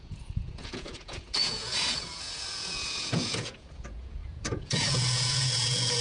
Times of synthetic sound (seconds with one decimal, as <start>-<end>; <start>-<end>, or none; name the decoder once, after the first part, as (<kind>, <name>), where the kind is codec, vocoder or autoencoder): 0.0-6.0 (vocoder, Vocos)